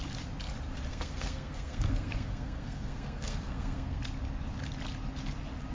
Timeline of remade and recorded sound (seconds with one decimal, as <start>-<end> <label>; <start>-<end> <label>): 0.0-0.9 recorded; 0.9-4.0 remade; 4.0-5.7 recorded